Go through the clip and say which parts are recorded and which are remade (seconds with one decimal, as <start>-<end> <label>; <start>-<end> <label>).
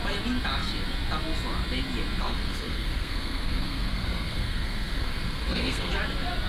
0.0-2.2 recorded; 2.2-5.9 remade; 5.9-6.5 recorded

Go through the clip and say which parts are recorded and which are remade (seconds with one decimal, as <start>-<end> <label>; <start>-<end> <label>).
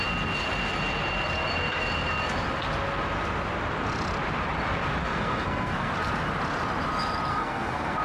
0.0-5.0 recorded; 5.0-5.9 remade; 5.9-7.3 recorded; 7.3-8.0 remade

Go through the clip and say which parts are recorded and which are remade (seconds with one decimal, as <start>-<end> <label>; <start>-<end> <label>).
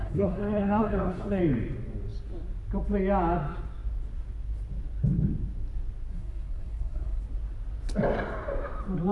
0.0-1.4 remade; 1.4-6.1 recorded; 6.1-7.2 remade; 7.2-9.1 recorded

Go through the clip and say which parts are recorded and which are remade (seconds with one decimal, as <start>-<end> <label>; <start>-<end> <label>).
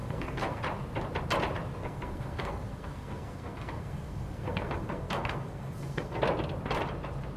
0.0-0.6 remade; 0.6-1.8 recorded; 1.8-6.2 remade; 6.2-7.4 recorded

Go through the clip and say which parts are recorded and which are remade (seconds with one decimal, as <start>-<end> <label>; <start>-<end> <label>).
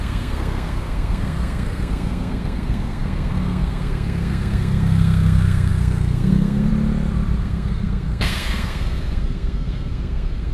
0.0-6.7 remade; 6.7-7.4 recorded; 7.4-10.5 remade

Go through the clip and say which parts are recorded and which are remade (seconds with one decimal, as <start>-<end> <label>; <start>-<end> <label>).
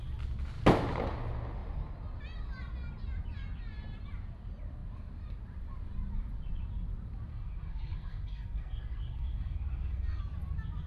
0.0-7.3 recorded; 7.3-10.2 remade; 10.2-10.9 recorded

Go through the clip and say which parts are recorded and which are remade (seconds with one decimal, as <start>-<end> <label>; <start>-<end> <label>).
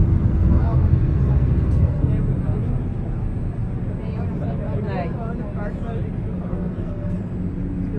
0.0-2.1 remade; 2.1-6.5 recorded; 6.5-7.2 remade; 7.2-8.0 recorded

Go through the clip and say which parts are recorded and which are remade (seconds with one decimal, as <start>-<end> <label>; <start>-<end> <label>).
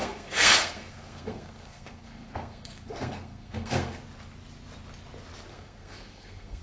0.0-4.0 remade; 4.0-5.5 recorded; 5.5-6.6 remade